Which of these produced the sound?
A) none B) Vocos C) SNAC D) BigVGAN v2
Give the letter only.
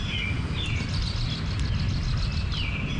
A